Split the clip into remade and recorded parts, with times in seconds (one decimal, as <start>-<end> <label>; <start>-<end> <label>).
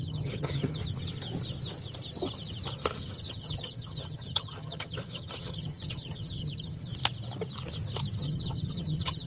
0.0-0.8 remade; 0.8-3.2 recorded; 3.2-6.9 remade; 6.9-8.2 recorded; 8.2-9.3 remade